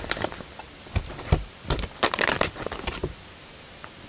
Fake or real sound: fake